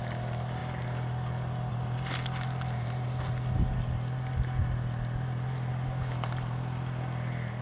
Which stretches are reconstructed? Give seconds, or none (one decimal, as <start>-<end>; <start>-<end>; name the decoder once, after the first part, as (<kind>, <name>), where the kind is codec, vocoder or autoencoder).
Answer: none